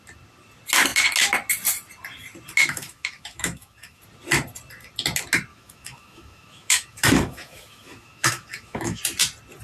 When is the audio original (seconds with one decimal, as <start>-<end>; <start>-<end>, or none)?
0.0-2.6; 4.0-5.5; 9.0-9.6